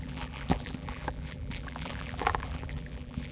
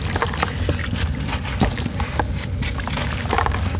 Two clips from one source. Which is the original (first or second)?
second